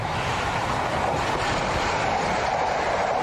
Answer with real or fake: real